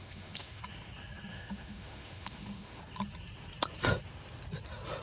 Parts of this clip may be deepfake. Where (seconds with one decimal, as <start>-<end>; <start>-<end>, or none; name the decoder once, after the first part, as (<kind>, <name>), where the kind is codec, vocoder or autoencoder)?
0.0-0.6 (autoencoder, DAC-VAE); 1.3-2.8